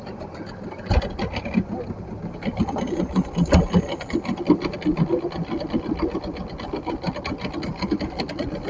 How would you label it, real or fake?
real